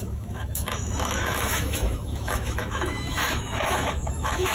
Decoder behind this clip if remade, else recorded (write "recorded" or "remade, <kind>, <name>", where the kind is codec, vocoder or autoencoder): remade, autoencoder, DAC-VAE